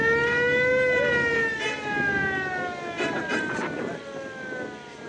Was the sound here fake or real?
real